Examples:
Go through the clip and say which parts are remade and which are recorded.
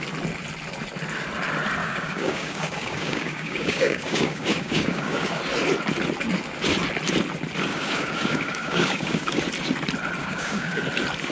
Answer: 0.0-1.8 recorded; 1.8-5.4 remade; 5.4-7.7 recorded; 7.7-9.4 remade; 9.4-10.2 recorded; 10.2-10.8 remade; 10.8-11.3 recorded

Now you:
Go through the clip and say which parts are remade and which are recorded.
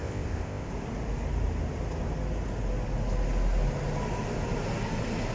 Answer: 0.0-0.7 remade; 0.7-5.3 recorded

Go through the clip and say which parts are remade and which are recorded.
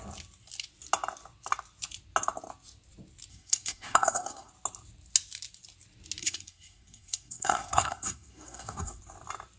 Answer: 0.0-3.3 recorded; 3.3-4.5 remade; 4.5-6.2 recorded; 6.2-9.0 remade; 9.0-9.6 recorded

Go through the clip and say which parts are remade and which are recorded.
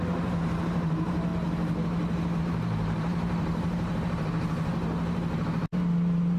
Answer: 0.0-1.3 remade; 1.3-2.4 recorded; 2.4-6.4 remade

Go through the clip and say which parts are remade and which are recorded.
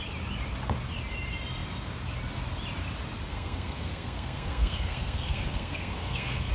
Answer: 0.0-3.3 recorded; 3.3-6.5 remade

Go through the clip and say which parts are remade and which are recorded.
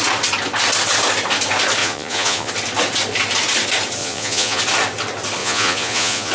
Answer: 0.0-1.8 recorded; 1.8-2.5 remade; 2.5-4.0 recorded; 4.0-4.6 remade; 4.6-5.4 recorded; 5.4-6.3 remade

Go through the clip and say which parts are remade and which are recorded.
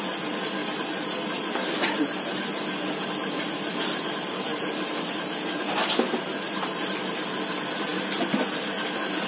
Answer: 0.0-4.5 recorded; 4.5-5.1 remade; 5.1-9.3 recorded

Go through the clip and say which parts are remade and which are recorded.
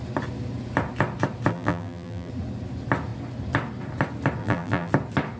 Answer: 0.0-1.5 recorded; 1.5-2.3 remade; 2.3-4.4 recorded; 4.4-4.9 remade; 4.9-5.4 recorded